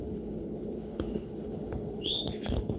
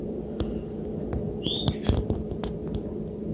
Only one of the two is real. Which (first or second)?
second